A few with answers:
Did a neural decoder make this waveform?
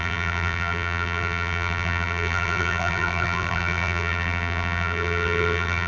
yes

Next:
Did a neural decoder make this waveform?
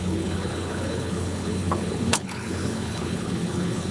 yes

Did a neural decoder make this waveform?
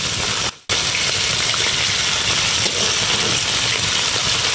no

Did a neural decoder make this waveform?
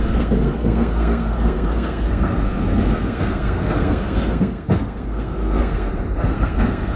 yes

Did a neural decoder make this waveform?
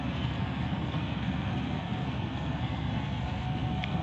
yes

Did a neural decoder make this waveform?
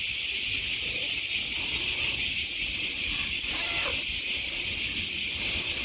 no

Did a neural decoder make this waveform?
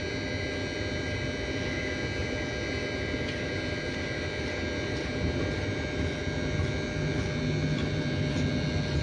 no